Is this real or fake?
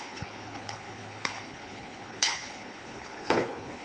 fake